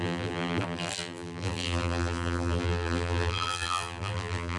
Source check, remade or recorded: remade